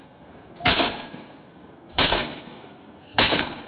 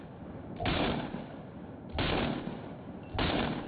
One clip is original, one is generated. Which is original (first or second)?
second